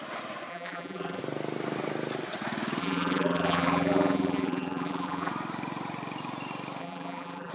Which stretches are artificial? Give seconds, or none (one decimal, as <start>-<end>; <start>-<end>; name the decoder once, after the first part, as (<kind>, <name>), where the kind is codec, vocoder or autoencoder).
0.5-1.2 (vocoder, BigVGAN v2); 2.8-5.3; 6.8-7.5